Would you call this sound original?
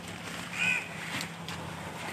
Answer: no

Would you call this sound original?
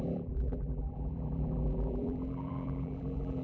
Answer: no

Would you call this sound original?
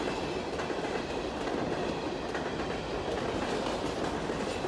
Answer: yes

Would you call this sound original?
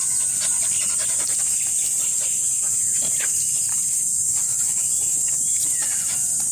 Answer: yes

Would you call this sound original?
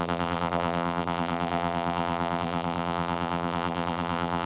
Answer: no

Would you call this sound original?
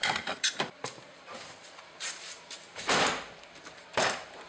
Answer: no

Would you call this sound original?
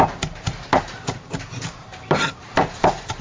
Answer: no